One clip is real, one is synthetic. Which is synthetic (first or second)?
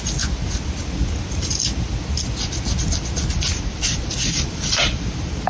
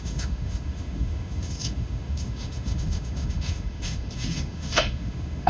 second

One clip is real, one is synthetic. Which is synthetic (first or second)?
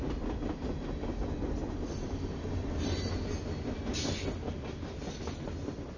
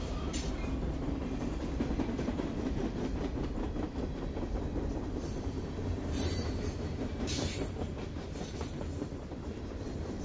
second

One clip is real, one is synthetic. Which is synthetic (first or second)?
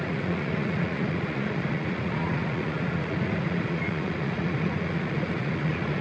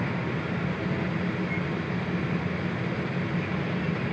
first